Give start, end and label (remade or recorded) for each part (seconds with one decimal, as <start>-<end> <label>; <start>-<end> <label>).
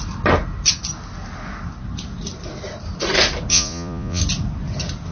0.0-3.5 recorded; 3.5-4.2 remade; 4.2-5.1 recorded